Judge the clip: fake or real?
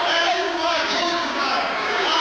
fake